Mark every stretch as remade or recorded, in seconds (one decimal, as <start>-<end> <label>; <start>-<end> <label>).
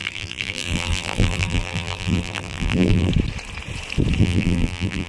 0.0-3.1 remade; 3.1-4.2 recorded; 4.2-5.1 remade